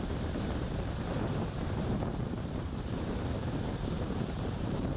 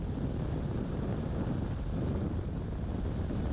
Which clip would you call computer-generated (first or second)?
first